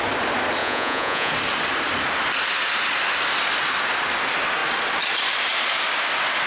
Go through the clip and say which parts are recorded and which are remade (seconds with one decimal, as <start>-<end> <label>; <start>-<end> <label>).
0.0-0.6 recorded; 0.6-1.3 remade; 1.3-6.5 recorded